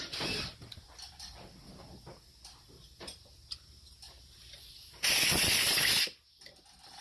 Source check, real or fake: real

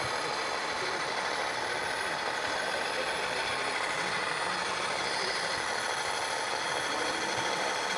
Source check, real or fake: real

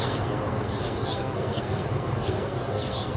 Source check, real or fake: fake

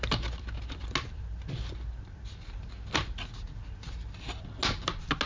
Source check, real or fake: real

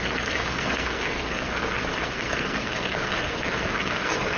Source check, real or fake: fake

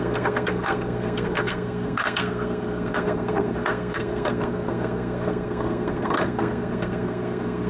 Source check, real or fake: fake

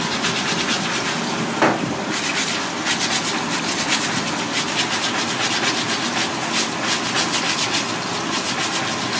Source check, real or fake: real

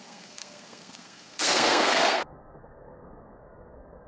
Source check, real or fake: fake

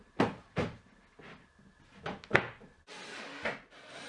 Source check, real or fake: real